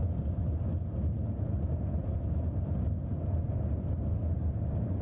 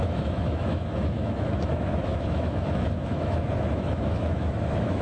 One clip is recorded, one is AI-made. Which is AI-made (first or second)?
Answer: second